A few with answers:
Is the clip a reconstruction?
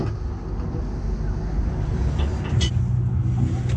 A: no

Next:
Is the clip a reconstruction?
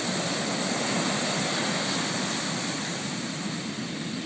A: no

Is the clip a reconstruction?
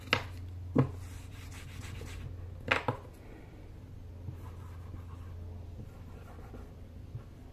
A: no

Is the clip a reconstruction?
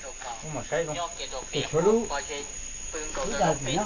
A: no